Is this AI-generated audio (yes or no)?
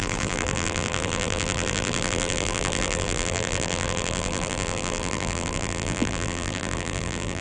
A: yes